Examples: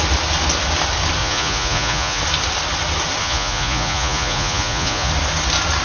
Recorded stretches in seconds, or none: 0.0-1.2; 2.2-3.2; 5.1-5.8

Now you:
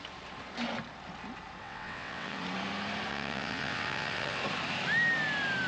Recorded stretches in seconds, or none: 0.0-1.6; 2.4-3.1; 4.4-5.7